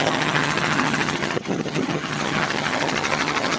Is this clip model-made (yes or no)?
yes